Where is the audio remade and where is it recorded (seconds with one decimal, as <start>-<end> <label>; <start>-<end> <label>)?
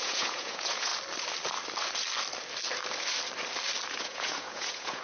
0.0-0.9 remade; 0.9-3.9 recorded; 3.9-5.0 remade